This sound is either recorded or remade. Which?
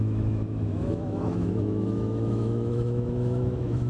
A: remade